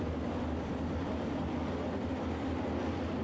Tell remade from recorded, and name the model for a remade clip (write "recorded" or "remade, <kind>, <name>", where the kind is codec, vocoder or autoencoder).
recorded